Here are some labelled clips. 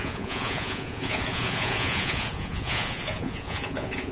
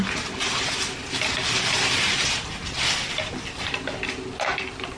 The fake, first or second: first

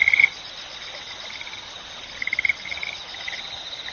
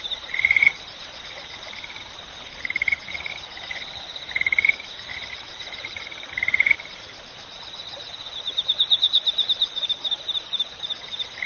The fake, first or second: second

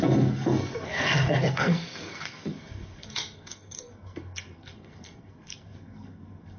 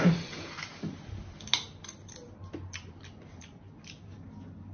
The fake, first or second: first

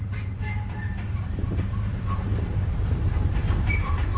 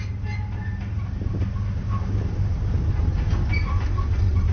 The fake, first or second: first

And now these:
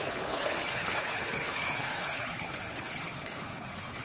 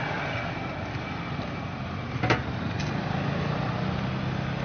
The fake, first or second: first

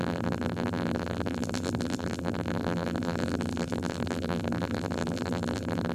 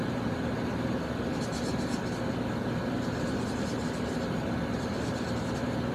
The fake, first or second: first